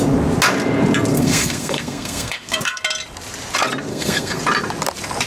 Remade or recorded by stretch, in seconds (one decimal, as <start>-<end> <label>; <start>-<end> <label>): 0.0-1.1 recorded; 1.1-2.8 remade; 2.8-3.9 recorded; 3.9-4.4 remade; 4.4-5.3 recorded